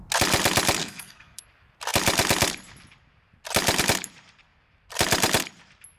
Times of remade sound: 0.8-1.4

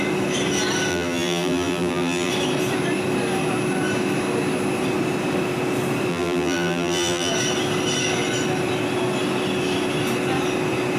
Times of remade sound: 0.9-2.3; 6.1-7.3

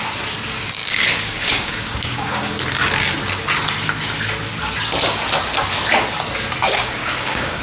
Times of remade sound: 0.8-2.6; 6.8-7.6

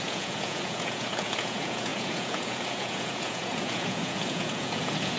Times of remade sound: 0.0-5.2

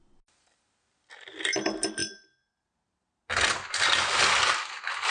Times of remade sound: none

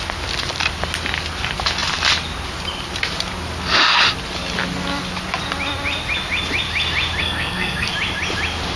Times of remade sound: 7.2-7.9

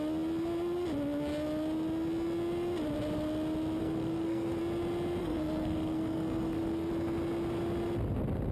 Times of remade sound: 3.8-4.6; 5.2-6.9